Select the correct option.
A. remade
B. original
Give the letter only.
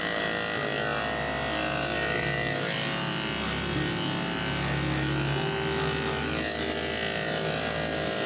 B